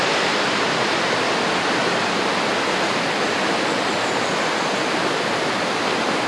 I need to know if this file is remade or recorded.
recorded